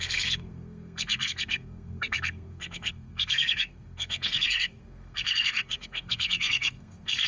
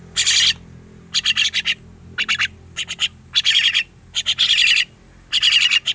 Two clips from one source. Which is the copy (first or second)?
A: first